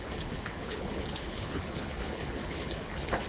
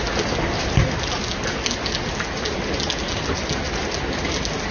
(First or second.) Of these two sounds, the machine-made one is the first